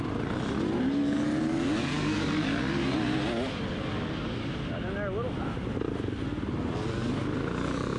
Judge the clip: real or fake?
real